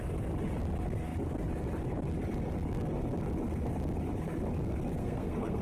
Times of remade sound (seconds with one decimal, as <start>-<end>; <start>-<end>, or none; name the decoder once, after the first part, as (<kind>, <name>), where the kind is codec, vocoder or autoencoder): 5.0-5.6 (codec, SNAC)